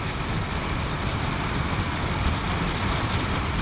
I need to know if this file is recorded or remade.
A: recorded